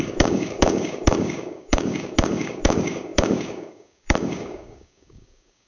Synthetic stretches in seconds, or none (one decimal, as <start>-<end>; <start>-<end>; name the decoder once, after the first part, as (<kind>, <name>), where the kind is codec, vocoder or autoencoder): 0.0-5.7 (codec, DAC)